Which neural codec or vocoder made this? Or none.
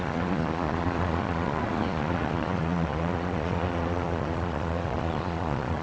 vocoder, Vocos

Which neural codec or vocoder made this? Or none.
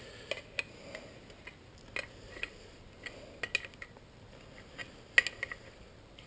none